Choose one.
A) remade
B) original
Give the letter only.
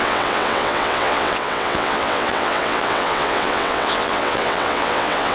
A